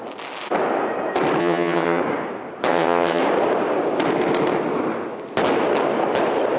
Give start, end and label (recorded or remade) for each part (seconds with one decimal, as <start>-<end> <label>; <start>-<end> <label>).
0.0-1.4 recorded; 1.4-2.0 remade; 2.0-2.7 recorded; 2.7-3.2 remade; 3.2-6.6 recorded